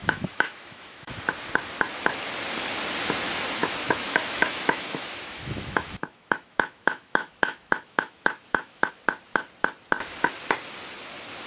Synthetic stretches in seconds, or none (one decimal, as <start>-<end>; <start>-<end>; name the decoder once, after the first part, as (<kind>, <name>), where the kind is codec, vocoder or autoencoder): 0.0-1.1 (autoencoder, DAC-VAE); 3.6-8.9